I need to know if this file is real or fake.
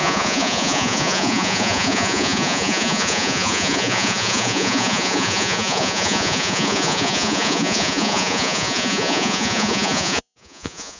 fake